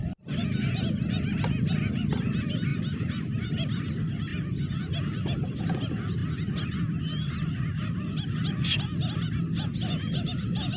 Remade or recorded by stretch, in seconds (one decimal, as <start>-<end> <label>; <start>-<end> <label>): 0.0-0.4 remade; 0.4-1.1 recorded; 1.1-6.2 remade; 6.2-7.3 recorded; 7.3-10.8 remade